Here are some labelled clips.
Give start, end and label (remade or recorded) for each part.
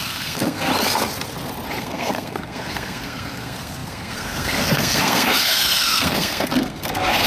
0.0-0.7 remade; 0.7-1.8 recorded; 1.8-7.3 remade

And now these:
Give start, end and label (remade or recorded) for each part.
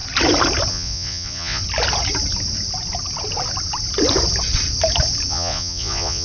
0.0-0.7 recorded; 0.7-1.6 remade; 1.6-5.3 recorded; 5.3-6.2 remade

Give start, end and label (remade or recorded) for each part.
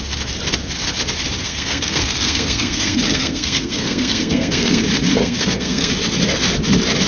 0.0-1.4 recorded; 1.4-4.8 remade; 4.8-5.2 recorded; 5.2-5.9 remade; 5.9-7.1 recorded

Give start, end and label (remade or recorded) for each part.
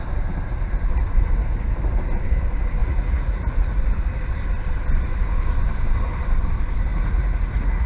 0.0-2.8 recorded; 2.8-3.8 remade; 3.8-6.9 recorded; 6.9-7.9 remade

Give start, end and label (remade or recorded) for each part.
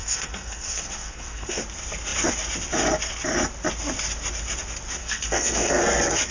0.0-1.6 remade; 1.6-5.0 recorded; 5.0-5.8 remade; 5.8-6.3 recorded